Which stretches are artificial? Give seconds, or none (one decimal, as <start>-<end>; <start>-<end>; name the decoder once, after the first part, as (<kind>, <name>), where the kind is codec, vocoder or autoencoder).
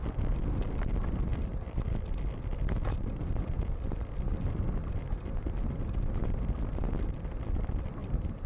8.0-8.5 (vocoder, BigVGAN v2)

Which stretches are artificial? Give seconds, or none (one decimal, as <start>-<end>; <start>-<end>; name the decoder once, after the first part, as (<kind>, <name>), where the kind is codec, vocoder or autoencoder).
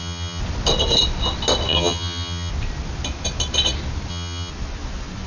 0.0-0.4 (vocoder, HiFi-GAN); 1.7-2.5; 4.1-4.5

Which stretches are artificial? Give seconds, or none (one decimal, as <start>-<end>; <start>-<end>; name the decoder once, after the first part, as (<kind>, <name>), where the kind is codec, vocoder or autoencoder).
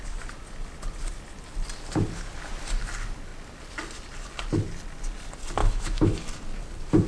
5.6-6.2 (autoencoder, DAC-VAE)